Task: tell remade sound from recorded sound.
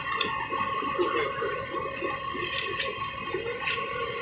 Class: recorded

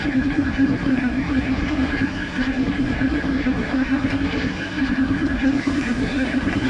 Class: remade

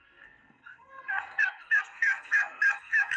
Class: remade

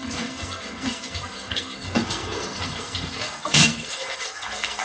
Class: remade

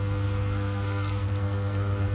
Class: remade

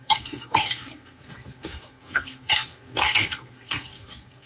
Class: remade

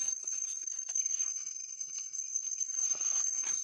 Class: remade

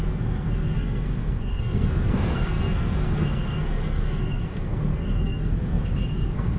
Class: remade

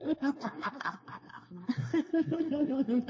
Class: remade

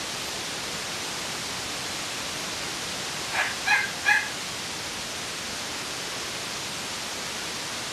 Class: recorded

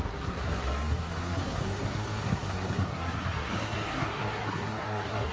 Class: remade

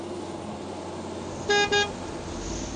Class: recorded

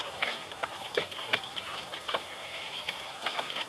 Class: remade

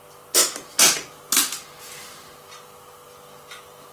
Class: recorded